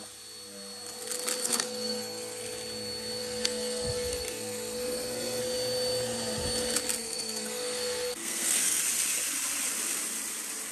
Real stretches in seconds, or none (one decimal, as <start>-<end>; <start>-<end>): 0.0-1.4; 2.4-3.2; 5.4-7.0; 8.8-10.7